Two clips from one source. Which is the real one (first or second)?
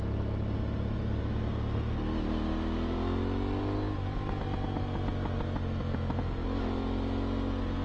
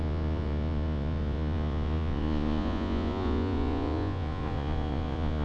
first